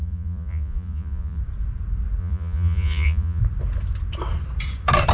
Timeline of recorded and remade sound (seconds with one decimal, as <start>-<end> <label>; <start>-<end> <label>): 0.0-1.4 remade; 1.4-2.2 recorded; 2.2-3.4 remade; 3.4-5.1 recorded